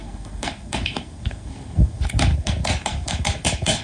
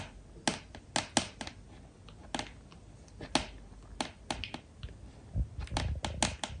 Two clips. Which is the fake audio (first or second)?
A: first